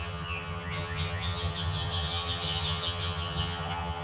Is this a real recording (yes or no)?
no